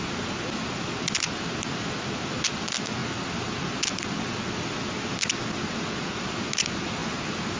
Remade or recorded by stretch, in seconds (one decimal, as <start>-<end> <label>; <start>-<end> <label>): 0.0-7.6 recorded